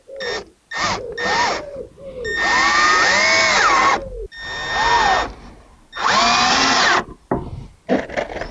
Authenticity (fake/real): real